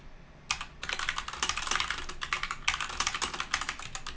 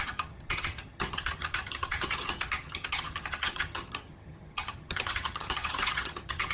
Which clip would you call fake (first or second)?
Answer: second